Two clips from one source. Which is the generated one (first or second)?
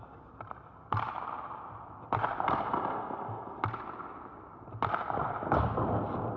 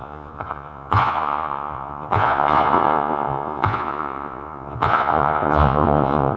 second